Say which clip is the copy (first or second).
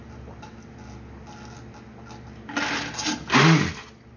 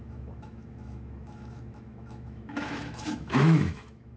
second